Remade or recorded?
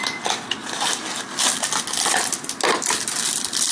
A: recorded